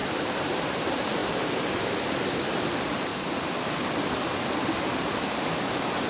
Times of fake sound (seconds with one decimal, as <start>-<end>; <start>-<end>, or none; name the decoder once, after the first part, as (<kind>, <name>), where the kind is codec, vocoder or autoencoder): 0.0-3.1 (vocoder, BigVGAN v2); 4.2-6.1

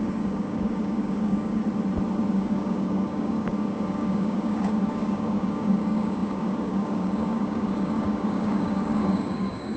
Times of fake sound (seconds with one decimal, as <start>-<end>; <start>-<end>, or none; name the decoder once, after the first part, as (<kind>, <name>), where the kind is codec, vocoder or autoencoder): 0.0-1.6 (codec, DAC); 2.3-9.8

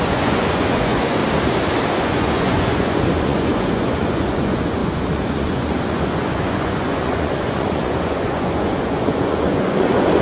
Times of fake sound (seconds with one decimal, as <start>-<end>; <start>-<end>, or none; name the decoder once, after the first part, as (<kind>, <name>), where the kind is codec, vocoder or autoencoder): 0.0-1.2 (vocoder, Vocos); 1.9-10.2

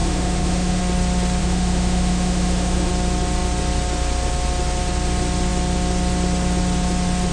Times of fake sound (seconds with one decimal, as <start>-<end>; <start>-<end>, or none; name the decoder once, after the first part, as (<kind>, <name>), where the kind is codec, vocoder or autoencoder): 0.0-0.8 (autoencoder, DAC-VAE); 1.4-2.9

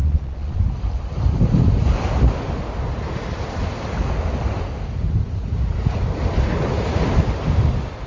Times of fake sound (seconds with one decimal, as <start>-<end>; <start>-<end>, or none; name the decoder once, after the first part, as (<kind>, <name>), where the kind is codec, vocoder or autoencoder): 0.0-0.6 (vocoder, Vocos)

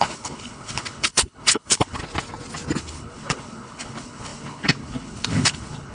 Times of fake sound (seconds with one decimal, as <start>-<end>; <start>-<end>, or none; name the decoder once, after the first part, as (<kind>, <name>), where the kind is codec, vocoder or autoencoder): 0.0-2.0 (codec, HILCodec); 2.8-5.9

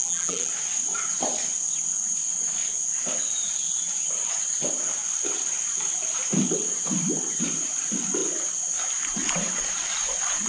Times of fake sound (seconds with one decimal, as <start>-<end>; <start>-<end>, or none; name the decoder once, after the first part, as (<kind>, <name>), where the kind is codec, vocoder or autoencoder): 0.0-0.5 (vocoder, BigVGAN v2)